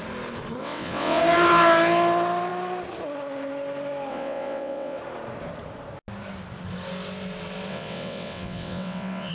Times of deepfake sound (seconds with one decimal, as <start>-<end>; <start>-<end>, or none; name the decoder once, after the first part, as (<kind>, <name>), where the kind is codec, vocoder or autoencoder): 0.6-1.2 (vocoder, WaveNeXt); 4.1-5.0; 7.7-9.3